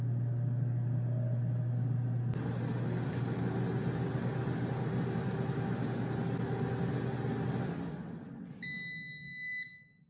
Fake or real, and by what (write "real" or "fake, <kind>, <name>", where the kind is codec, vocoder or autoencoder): real